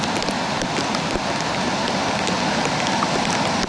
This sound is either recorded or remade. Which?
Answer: recorded